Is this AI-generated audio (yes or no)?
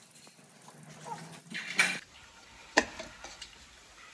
no